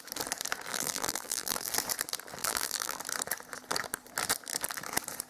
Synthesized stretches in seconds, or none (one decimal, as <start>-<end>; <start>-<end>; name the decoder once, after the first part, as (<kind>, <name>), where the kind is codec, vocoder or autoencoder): 0.7-1.7 (vocoder, BigVGAN v2); 2.4-3.0

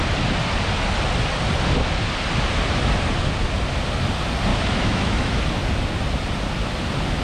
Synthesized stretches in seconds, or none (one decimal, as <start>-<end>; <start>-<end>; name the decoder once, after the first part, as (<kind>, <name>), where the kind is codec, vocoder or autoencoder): 4.5-5.4 (autoencoder, DAC-VAE)

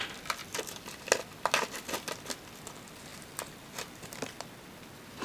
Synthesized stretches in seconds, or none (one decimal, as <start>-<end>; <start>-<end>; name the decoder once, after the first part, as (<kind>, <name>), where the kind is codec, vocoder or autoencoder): none